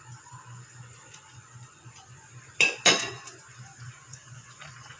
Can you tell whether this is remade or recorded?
remade